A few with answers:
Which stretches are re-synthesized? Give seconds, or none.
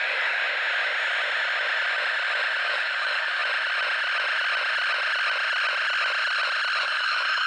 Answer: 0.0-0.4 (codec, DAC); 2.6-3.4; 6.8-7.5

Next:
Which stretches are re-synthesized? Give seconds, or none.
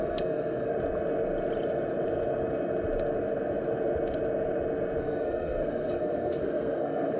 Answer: 0.0-0.7 (codec, SNAC); 5.0-7.2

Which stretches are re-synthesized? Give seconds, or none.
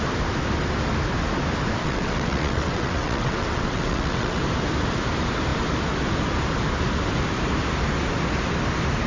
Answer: 1.8-4.4 (vocoder, WaveNeXt)